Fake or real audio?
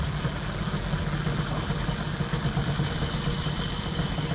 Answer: real